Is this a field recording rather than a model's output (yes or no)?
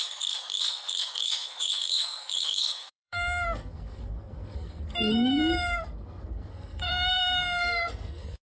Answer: no